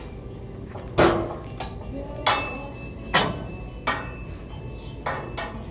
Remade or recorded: recorded